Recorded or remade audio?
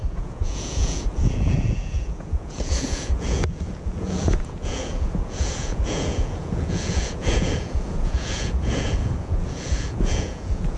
remade